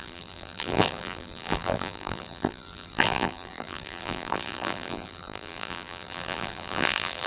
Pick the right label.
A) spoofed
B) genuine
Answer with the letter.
A